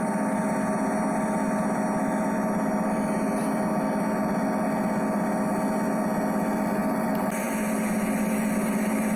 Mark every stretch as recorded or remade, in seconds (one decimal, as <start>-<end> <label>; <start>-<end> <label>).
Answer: 0.0-6.8 recorded; 6.8-7.5 remade; 7.5-9.2 recorded